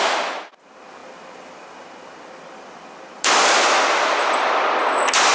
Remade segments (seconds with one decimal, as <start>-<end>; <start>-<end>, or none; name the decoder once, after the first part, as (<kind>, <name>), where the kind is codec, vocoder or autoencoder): none